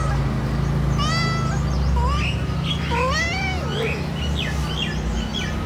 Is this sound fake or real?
real